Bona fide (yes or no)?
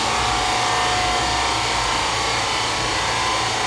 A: yes